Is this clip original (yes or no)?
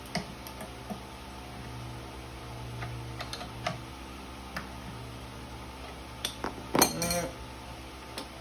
yes